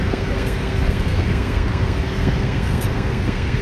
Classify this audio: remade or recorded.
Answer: remade